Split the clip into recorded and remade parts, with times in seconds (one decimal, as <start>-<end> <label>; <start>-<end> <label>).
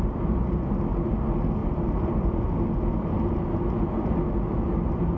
0.0-1.6 recorded; 1.6-2.3 remade; 2.3-2.9 recorded; 2.9-3.4 remade; 3.4-5.2 recorded